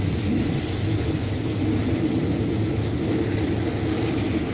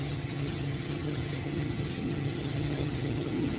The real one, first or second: first